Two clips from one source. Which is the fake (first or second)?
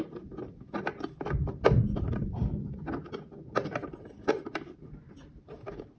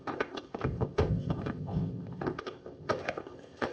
second